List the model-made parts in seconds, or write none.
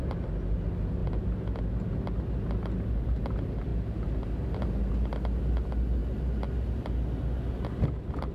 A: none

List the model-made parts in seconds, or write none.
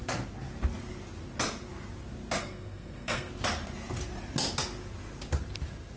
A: 2.4-3.3 (codec, SNAC)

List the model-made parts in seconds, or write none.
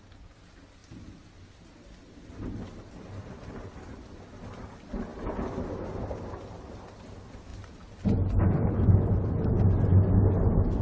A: none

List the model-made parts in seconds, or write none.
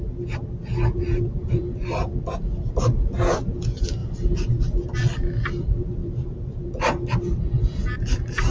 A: 1.1-2.1 (vocoder, BigVGAN v2); 6.0-8.5